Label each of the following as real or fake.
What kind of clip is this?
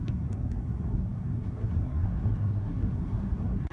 fake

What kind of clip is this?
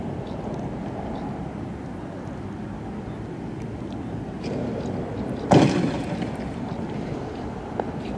real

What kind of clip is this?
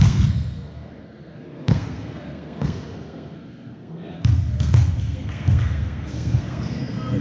fake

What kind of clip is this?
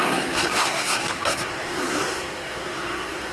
fake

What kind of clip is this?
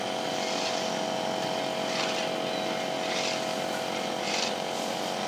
real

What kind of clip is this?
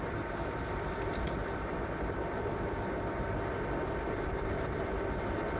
real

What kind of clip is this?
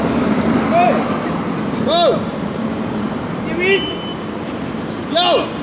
real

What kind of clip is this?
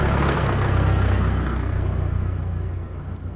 fake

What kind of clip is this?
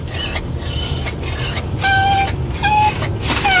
real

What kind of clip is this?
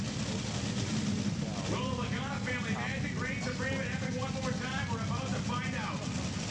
real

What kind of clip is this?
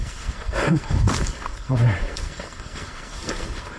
fake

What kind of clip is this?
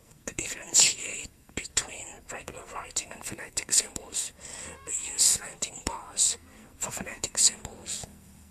fake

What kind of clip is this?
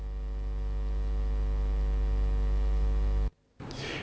real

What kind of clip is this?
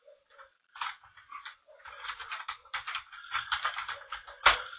real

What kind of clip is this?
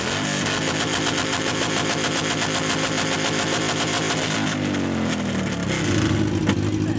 real